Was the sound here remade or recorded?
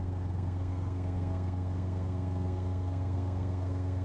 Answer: remade